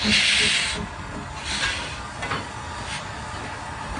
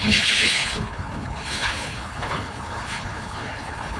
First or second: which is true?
first